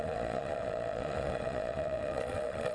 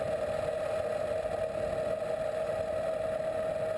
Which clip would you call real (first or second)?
second